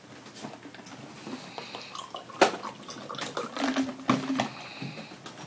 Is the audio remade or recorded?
recorded